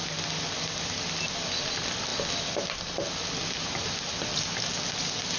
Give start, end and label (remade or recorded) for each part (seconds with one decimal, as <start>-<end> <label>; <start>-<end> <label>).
0.0-5.4 recorded